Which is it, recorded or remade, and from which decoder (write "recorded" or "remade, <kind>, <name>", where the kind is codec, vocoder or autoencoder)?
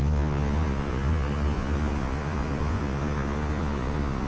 remade, vocoder, Vocos